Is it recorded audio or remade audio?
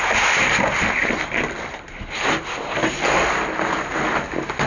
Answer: recorded